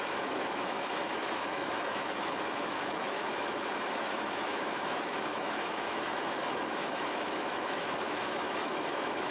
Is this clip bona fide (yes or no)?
no